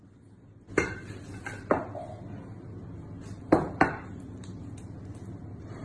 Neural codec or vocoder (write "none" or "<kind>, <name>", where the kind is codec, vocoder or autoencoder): none